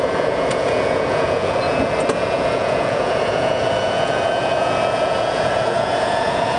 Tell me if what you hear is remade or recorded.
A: remade